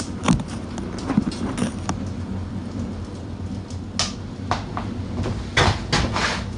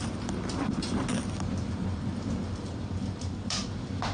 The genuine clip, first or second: first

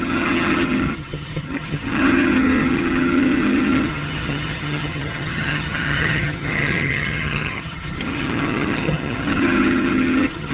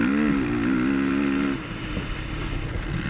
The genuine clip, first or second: second